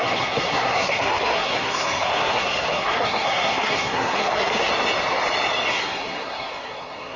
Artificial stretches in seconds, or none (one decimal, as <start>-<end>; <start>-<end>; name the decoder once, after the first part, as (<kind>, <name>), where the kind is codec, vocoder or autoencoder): 0.0-4.7 (codec, SNAC); 5.7-7.2